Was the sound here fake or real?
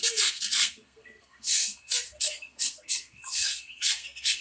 fake